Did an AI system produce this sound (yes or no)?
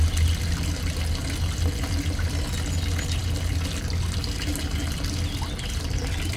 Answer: no